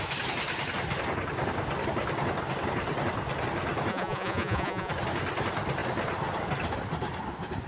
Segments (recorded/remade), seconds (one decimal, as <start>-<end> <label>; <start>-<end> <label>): 0.0-3.9 recorded; 3.9-4.9 remade; 4.9-7.7 recorded